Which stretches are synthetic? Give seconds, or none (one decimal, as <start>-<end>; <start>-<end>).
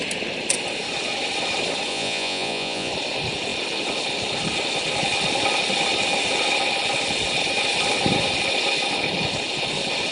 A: 1.9-2.9